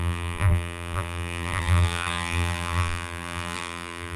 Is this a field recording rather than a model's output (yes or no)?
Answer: no